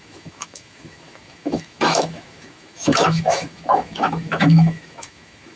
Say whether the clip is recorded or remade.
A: remade